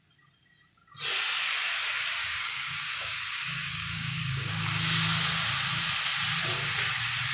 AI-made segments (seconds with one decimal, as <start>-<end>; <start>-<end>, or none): 2.2-4.5